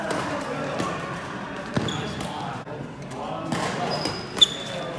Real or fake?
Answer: real